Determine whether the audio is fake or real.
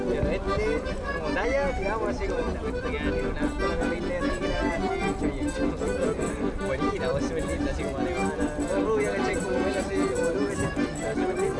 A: real